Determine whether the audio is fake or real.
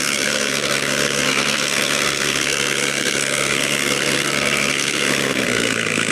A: fake